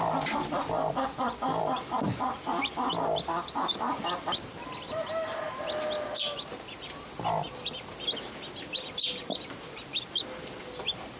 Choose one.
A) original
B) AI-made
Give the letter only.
A